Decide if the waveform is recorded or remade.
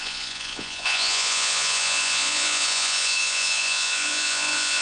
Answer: remade